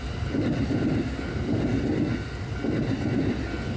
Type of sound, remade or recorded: recorded